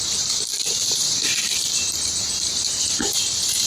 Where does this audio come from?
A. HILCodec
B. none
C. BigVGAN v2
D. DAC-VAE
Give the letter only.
C